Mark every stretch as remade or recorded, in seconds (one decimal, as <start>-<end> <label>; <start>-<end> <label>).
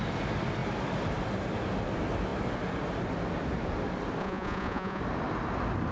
0.0-4.2 recorded; 4.2-5.0 remade; 5.0-5.9 recorded